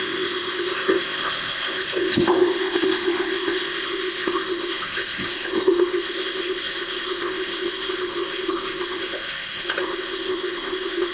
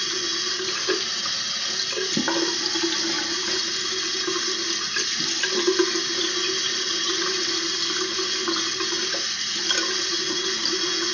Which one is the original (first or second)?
second